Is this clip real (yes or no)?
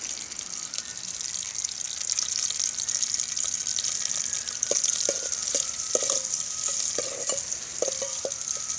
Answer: yes